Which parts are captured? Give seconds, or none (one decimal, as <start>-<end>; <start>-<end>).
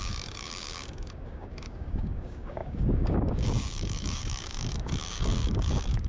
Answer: none